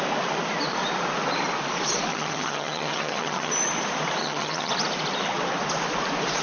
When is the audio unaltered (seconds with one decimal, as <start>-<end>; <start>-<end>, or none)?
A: 0.0-2.1; 3.5-4.2; 4.7-6.4